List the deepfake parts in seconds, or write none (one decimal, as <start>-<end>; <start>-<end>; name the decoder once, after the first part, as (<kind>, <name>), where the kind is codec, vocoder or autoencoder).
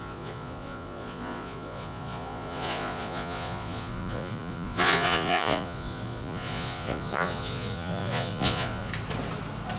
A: 0.0-8.9 (vocoder, Vocos)